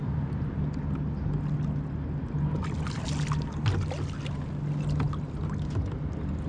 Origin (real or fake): real